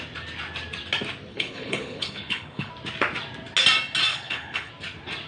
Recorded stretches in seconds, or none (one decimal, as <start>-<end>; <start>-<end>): 0.0-1.3; 2.7-4.1; 4.7-5.3